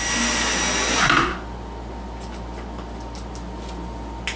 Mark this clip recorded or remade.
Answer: recorded